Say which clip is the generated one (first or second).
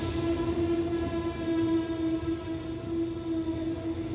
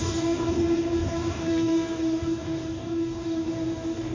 second